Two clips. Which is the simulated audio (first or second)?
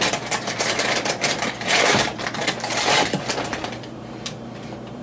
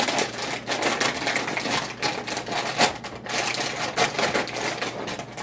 first